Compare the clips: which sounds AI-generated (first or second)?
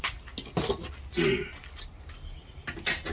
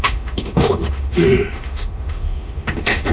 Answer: second